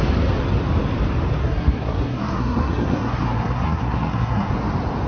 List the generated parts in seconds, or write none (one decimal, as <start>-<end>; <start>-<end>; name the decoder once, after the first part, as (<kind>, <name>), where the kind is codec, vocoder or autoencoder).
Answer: 1.4-4.5 (codec, SNAC)